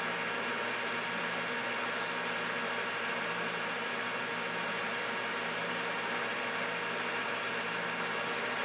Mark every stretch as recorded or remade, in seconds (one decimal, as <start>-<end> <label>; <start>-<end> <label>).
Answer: 0.0-8.6 recorded